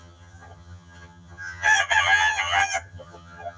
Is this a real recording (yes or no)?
no